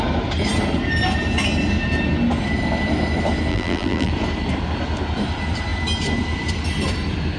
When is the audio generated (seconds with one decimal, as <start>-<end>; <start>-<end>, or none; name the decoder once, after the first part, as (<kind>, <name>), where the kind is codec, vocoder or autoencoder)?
3.5-4.1 (vocoder, BigVGAN v2)